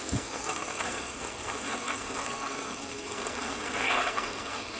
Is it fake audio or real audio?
fake